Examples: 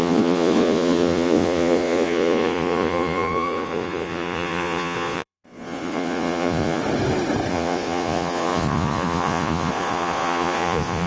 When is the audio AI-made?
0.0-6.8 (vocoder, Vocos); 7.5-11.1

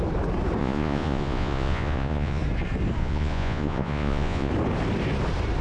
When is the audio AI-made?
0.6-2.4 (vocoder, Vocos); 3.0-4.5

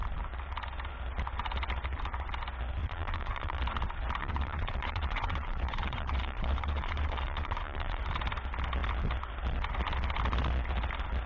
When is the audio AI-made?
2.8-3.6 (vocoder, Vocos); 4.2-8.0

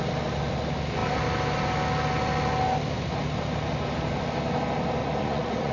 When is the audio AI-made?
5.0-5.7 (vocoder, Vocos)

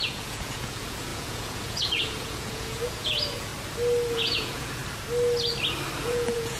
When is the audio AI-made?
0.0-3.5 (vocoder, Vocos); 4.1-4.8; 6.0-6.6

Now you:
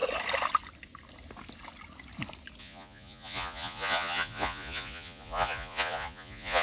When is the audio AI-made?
2.6-6.6 (vocoder, Vocos)